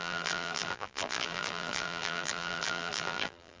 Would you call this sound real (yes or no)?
no